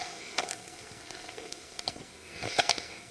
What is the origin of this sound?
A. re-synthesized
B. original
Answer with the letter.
A